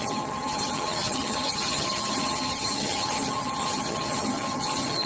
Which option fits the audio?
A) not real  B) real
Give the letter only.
A